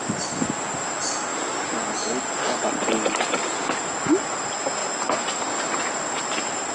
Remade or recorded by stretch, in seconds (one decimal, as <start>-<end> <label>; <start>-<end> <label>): 0.0-6.7 recorded